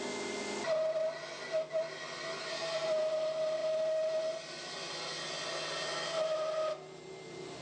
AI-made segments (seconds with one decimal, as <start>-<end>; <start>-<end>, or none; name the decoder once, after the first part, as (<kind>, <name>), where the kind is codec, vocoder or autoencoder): none